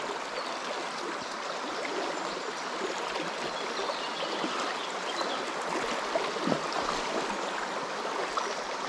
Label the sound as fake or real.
real